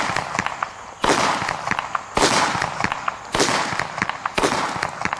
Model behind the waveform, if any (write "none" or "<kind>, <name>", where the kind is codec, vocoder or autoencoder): none